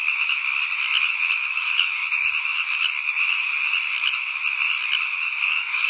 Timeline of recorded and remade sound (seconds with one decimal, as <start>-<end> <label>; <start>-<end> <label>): 0.0-1.3 recorded; 1.3-2.0 remade; 2.0-5.0 recorded; 5.0-5.9 remade

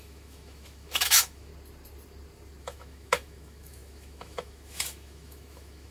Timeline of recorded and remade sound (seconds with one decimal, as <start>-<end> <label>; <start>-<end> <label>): 0.0-1.5 remade; 1.5-2.6 recorded; 2.6-5.9 remade

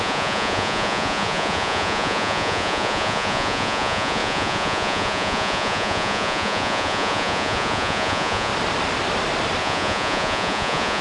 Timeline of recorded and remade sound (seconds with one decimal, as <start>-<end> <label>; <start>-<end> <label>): 0.0-8.5 remade; 8.5-9.6 recorded; 9.6-11.0 remade

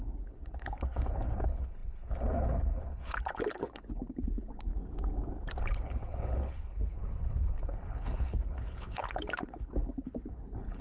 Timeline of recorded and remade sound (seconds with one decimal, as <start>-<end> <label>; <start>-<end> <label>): 0.0-4.7 remade; 4.7-5.6 recorded; 5.6-10.8 remade

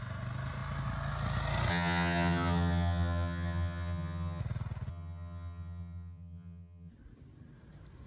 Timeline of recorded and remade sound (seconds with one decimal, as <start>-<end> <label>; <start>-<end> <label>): 0.0-1.7 recorded; 1.7-4.4 remade; 4.4-4.9 recorded; 4.9-6.9 remade; 6.9-8.1 recorded

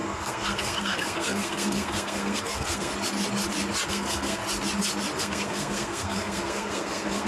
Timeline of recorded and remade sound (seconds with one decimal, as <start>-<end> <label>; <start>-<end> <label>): 0.0-2.9 remade; 2.9-3.9 recorded; 3.9-4.4 remade; 4.4-5.2 recorded; 5.2-7.3 remade